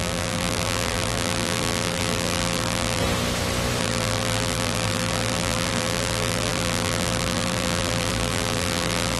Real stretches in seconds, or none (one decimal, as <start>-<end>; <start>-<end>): 3.0-3.8

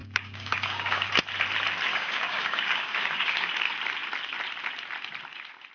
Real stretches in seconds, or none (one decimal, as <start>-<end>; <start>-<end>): 1.1-1.9; 3.5-5.7

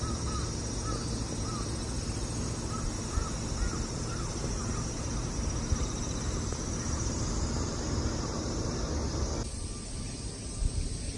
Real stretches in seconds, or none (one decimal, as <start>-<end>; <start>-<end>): 0.0-3.7; 8.8-11.2

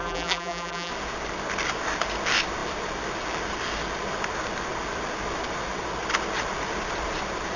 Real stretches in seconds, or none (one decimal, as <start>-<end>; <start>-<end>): 0.9-7.6

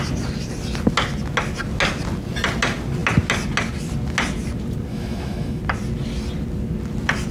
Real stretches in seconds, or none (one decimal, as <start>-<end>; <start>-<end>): 0.0-4.9; 5.6-7.3

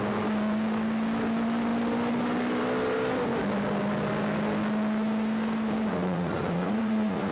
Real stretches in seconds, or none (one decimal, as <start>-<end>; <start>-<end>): 0.0-5.9